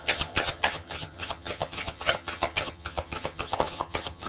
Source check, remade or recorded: remade